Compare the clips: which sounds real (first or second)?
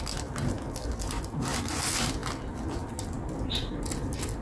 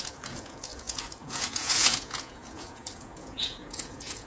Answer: first